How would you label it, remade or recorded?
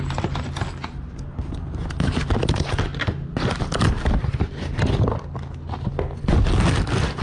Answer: recorded